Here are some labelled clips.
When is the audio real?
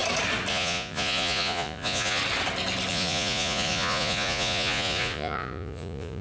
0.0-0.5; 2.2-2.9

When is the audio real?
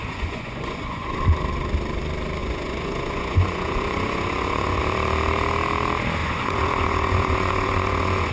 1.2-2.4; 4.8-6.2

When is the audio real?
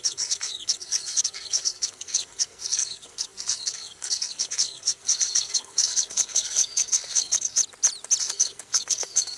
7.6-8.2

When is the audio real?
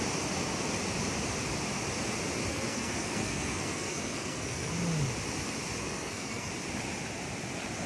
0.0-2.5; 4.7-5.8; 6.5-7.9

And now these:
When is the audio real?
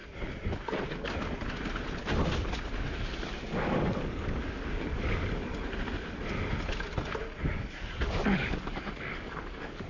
0.0-3.3; 5.5-7.4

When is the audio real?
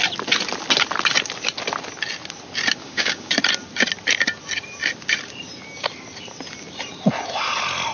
0.0-2.8; 3.3-7.9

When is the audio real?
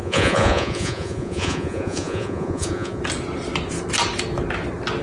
3.0-5.0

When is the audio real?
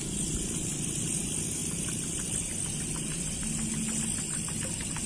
0.0-5.1